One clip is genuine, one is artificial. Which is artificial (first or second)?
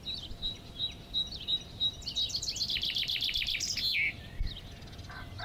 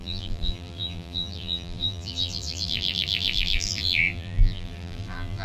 second